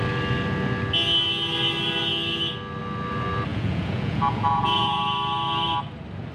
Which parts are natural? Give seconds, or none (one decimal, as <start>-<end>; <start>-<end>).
0.0-3.5; 5.0-6.3